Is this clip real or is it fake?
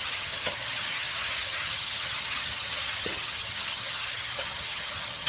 fake